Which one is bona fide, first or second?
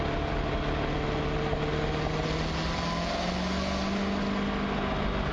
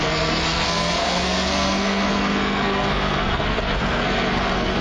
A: first